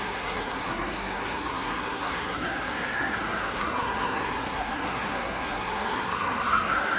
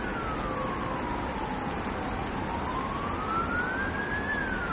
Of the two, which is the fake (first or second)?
first